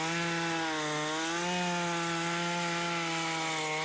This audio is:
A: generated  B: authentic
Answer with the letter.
B